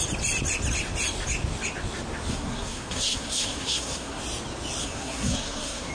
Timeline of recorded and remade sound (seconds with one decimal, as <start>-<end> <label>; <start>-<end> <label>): 0.0-2.3 recorded; 2.3-4.2 remade; 4.2-4.8 recorded; 4.8-5.9 remade